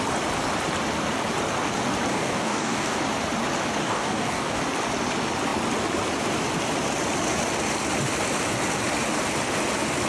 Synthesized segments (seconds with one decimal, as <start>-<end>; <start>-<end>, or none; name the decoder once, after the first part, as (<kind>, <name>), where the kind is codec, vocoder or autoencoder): 2.1-3.0 (codec, DAC); 3.8-4.6